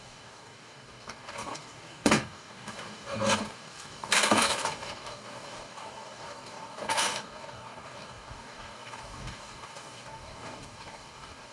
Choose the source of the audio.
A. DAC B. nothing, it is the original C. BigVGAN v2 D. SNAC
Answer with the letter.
A